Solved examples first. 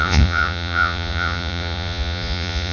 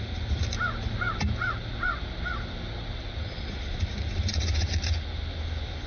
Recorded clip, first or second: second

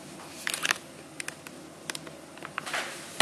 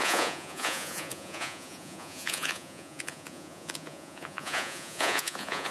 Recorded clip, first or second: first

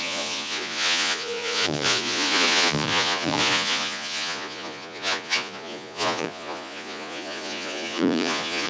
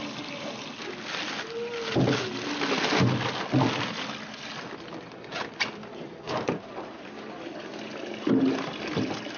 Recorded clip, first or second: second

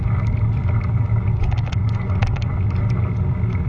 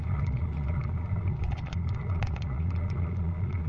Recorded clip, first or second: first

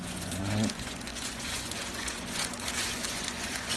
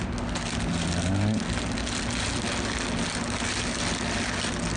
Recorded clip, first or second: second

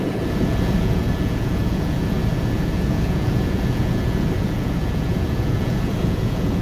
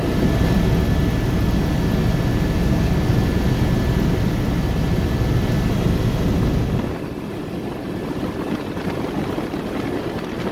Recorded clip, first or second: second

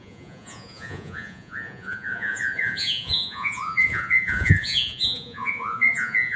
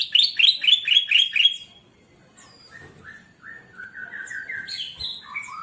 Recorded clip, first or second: second